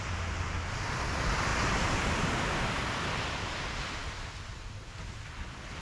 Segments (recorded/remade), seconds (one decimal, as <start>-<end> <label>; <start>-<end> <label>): 0.0-5.8 recorded